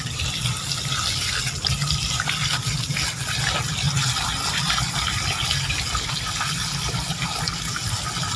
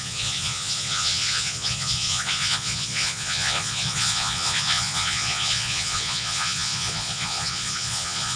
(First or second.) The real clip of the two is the first